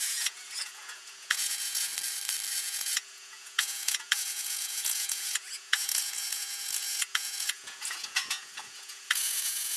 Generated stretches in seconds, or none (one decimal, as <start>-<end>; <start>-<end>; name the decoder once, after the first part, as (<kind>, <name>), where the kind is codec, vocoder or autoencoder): 0.0-1.9 (vocoder, Vocos); 2.6-9.8